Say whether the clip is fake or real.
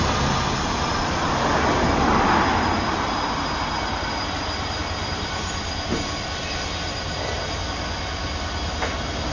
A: real